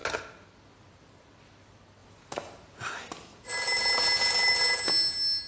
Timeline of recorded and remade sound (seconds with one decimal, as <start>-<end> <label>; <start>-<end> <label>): 0.0-5.5 recorded